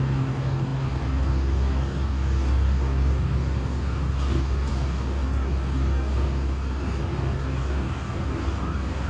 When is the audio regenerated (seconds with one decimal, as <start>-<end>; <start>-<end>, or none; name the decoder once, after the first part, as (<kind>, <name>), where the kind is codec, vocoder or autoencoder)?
0.0-9.1 (codec, DAC)